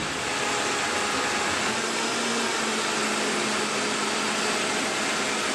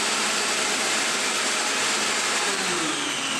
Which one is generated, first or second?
second